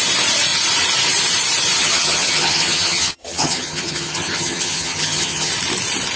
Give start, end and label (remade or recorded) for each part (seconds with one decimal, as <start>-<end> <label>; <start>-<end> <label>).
0.0-1.8 recorded; 1.8-5.5 remade; 5.5-6.2 recorded